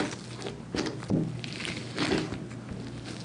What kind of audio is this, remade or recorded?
recorded